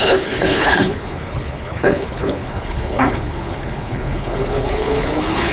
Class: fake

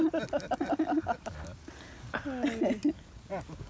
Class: real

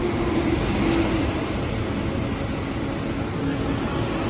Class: real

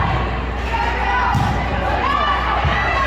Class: real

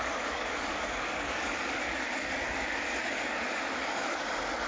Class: fake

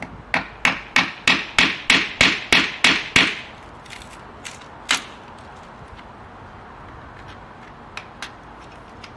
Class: real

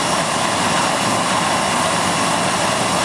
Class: real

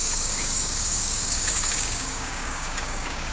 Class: fake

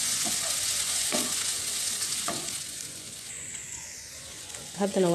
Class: fake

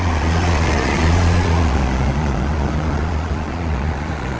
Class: fake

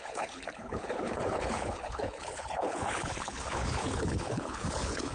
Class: fake